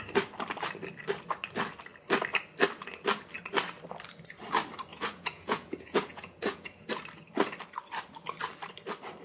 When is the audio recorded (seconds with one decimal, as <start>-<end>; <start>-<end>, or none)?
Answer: 0.0-4.9; 6.9-9.2